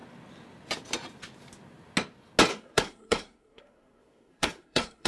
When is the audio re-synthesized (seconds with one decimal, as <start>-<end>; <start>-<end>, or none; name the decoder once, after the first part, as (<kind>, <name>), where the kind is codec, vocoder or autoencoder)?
2.5-5.1 (codec, SNAC)